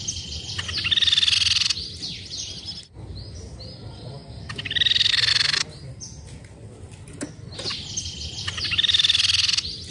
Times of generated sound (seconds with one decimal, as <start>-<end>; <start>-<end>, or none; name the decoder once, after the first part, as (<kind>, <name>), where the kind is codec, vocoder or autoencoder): none